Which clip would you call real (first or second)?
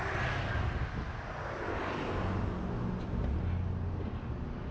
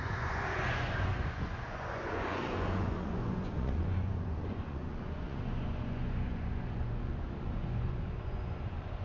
first